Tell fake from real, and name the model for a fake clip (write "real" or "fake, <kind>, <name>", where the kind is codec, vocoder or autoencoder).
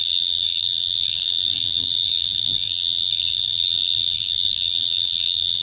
fake, vocoder, BigVGAN v2